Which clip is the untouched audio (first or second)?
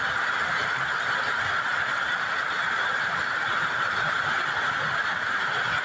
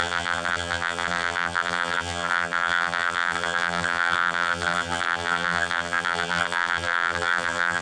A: first